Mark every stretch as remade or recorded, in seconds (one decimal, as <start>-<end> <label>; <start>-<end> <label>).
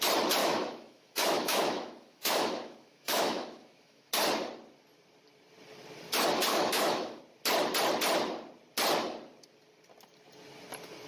0.0-0.4 recorded; 0.4-4.1 remade; 4.1-6.5 recorded; 6.5-7.2 remade; 7.2-11.1 recorded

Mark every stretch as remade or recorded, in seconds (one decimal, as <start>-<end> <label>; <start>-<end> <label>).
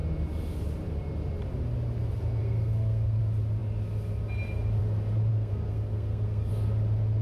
0.0-2.4 recorded; 2.4-3.2 remade; 3.2-5.3 recorded; 5.3-6.5 remade; 6.5-7.2 recorded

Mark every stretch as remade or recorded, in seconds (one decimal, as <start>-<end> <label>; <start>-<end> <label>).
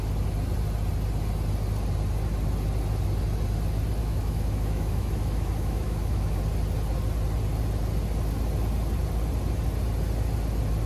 0.0-4.0 recorded; 4.0-6.4 remade; 6.4-10.9 recorded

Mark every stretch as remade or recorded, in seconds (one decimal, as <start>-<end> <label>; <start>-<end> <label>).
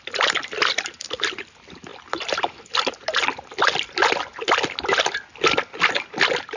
0.0-6.6 recorded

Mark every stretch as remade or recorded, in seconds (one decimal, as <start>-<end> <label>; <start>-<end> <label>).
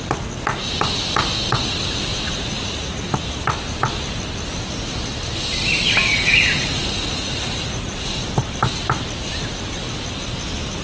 0.0-2.1 recorded; 2.1-3.0 remade; 3.0-6.1 recorded; 6.1-8.2 remade; 8.2-10.8 recorded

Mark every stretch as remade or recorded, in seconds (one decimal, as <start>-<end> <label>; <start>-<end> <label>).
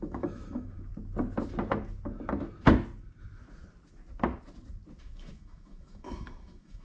0.0-0.9 remade; 0.9-5.0 recorded; 5.0-6.8 remade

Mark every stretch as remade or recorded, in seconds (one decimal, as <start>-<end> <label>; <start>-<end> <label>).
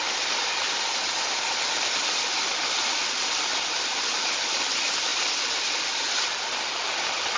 0.0-7.4 recorded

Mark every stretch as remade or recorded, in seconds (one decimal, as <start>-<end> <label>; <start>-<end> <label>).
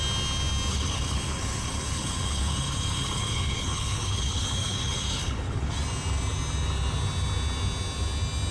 0.0-0.7 recorded; 0.7-5.7 remade; 5.7-8.5 recorded